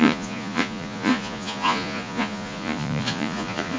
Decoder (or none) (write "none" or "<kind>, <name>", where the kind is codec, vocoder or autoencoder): vocoder, Vocos